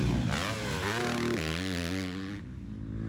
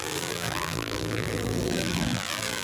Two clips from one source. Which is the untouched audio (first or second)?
first